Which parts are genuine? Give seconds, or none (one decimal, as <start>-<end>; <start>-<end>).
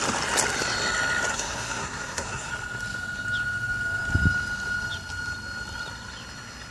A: 0.0-1.3; 2.5-6.7